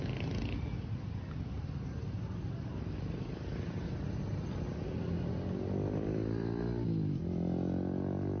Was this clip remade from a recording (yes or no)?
no